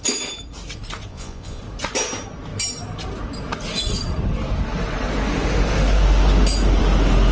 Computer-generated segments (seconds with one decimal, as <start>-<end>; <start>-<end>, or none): 1.1-1.6